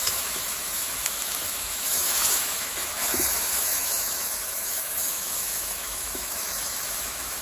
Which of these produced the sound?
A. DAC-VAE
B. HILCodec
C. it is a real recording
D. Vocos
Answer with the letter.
A